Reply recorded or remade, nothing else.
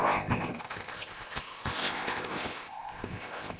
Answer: remade